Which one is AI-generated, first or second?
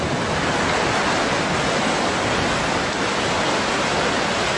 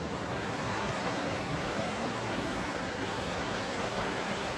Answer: second